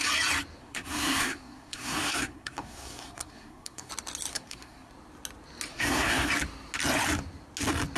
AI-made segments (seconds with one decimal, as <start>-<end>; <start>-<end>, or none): 0.6-3.9; 4.3-4.9; 5.7-6.3